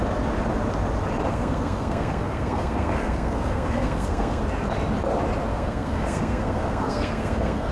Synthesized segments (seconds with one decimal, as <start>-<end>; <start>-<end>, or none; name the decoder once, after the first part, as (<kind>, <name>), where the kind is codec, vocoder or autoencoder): 1.3-4.4 (codec, SNAC); 5.5-7.7